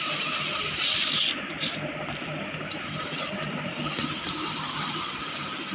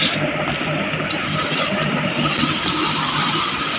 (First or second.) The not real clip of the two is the first